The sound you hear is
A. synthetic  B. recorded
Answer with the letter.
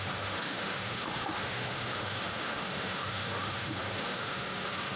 A